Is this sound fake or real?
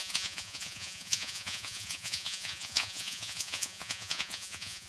fake